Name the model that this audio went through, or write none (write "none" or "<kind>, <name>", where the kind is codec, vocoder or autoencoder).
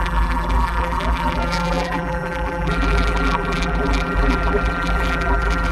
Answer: vocoder, BigVGAN v2